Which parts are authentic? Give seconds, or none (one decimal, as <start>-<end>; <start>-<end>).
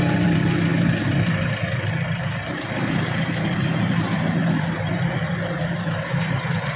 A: none